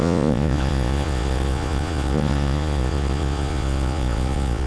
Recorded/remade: remade